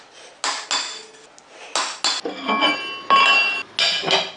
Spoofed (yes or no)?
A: no